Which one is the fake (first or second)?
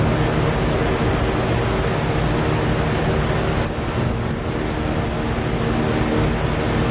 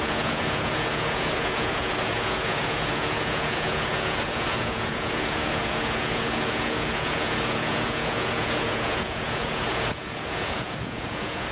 second